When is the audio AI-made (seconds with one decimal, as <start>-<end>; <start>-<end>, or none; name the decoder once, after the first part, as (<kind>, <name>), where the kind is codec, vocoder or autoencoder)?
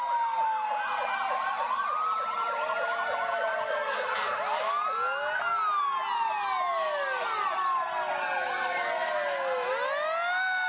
none